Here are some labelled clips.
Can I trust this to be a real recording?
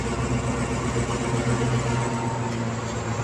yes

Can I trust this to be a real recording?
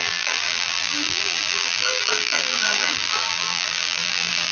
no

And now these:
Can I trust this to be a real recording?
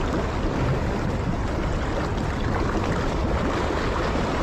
yes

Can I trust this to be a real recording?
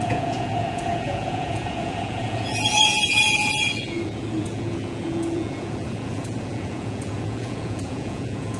no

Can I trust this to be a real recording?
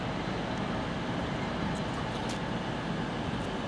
yes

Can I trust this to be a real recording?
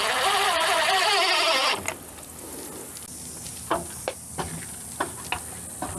yes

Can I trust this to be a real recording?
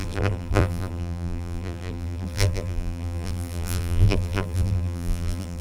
no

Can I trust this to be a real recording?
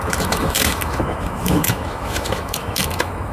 no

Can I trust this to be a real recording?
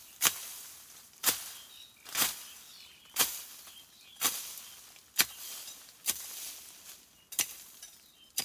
yes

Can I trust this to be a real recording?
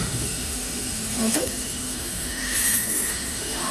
no